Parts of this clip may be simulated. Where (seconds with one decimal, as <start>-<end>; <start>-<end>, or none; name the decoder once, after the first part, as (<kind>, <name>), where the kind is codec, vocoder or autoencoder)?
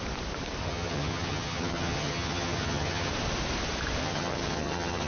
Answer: 0.6-3.1 (vocoder, HiFi-GAN); 4.0-5.1